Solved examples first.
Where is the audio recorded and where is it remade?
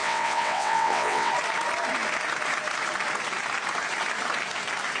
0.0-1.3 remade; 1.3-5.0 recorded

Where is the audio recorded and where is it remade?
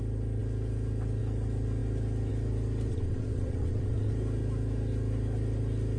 0.0-2.9 recorded; 2.9-4.1 remade; 4.1-6.0 recorded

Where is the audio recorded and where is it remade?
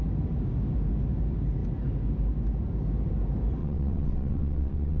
0.0-3.6 recorded; 3.6-5.0 remade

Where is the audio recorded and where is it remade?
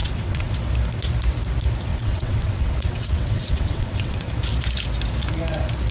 0.0-0.5 remade; 0.5-1.9 recorded; 1.9-4.3 remade; 4.3-5.9 recorded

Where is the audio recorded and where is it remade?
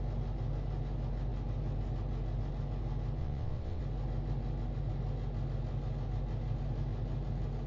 0.0-3.2 recorded; 3.2-3.8 remade; 3.8-7.7 recorded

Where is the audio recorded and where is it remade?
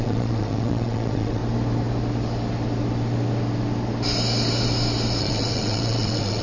0.0-1.4 remade; 1.4-5.2 recorded; 5.2-6.4 remade